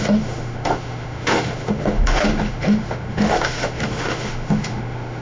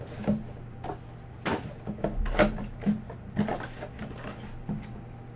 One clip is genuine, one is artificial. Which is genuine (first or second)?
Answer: second